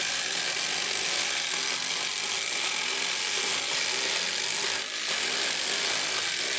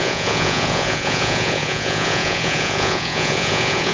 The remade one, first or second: second